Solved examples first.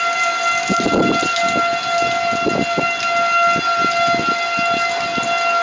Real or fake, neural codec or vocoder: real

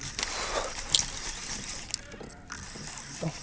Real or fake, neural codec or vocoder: real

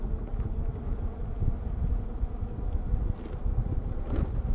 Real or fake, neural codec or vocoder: real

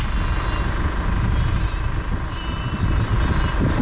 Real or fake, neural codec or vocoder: real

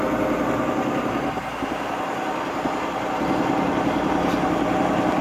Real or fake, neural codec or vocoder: real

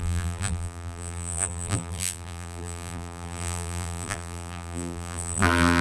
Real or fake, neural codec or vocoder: fake, vocoder, BigVGAN v2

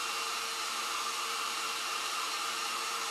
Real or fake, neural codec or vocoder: fake, vocoder, BigVGAN v2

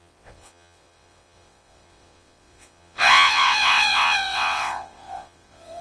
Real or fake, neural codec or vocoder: fake, vocoder, WaveNeXt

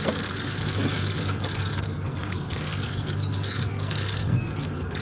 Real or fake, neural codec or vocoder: fake, codec, SNAC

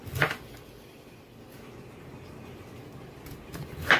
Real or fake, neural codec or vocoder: fake, vocoder, BigVGAN v2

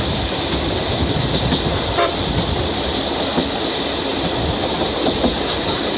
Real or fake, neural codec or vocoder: real